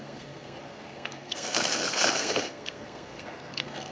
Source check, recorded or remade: remade